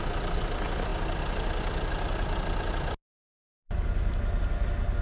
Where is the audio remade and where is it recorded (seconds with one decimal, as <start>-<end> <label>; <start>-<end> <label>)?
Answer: 0.0-5.0 recorded